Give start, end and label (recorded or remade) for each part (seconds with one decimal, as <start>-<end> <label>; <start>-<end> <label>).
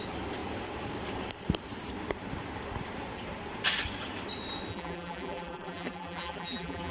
0.0-4.7 recorded; 4.7-6.9 remade